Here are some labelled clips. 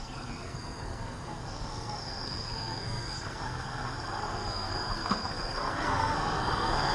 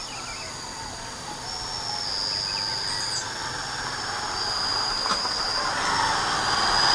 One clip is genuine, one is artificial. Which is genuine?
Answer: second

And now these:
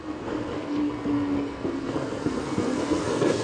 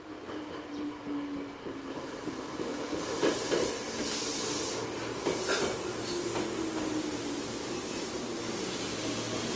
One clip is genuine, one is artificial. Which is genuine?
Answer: second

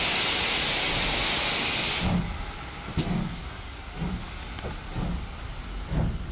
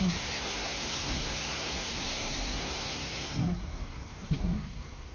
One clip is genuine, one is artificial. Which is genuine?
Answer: first